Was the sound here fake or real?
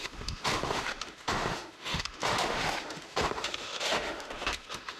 fake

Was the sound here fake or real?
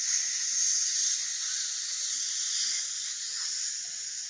real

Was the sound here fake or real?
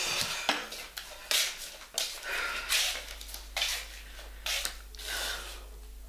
real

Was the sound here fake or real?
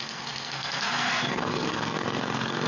fake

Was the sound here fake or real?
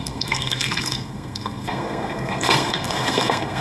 fake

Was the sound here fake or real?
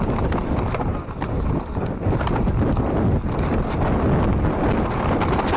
real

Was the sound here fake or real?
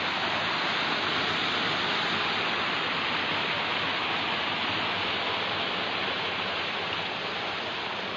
real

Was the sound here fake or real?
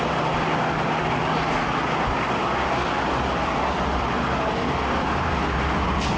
real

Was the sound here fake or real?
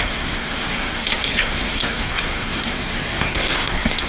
fake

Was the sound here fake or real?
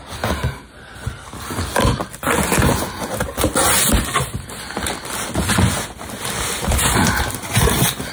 real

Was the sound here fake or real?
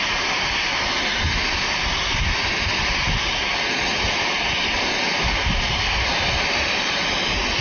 real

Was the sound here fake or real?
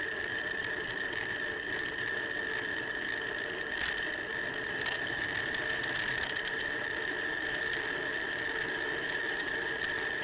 real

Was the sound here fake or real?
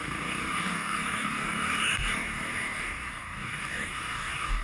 fake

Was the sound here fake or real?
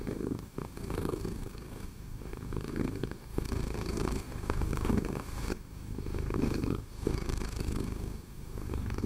fake